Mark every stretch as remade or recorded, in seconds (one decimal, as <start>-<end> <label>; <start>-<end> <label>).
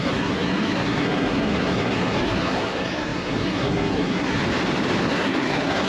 0.0-4.4 remade; 4.4-5.0 recorded; 5.0-5.9 remade